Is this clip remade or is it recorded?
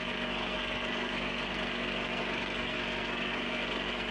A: remade